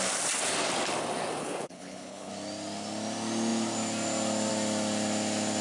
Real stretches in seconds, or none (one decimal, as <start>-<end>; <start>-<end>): 0.0-1.4; 2.3-5.6

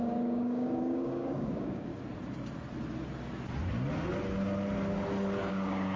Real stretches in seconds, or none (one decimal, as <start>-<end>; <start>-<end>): 1.9-5.5

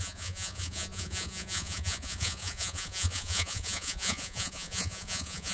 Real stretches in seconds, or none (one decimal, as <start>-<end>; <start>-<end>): none

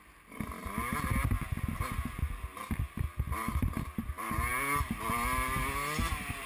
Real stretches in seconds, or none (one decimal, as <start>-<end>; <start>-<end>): 0.0-6.5

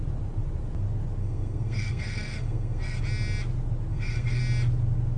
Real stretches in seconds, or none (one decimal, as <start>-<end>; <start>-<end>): 0.0-1.2; 3.0-3.9; 4.4-5.2